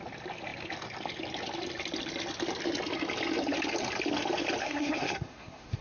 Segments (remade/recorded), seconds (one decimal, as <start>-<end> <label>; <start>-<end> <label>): 0.0-4.6 recorded; 4.6-5.8 remade